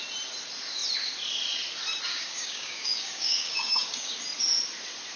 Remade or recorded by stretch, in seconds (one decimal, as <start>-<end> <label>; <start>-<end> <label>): 0.0-2.1 recorded; 2.1-4.1 remade; 4.1-5.2 recorded